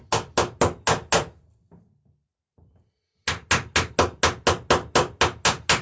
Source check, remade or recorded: recorded